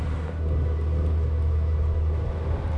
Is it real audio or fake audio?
real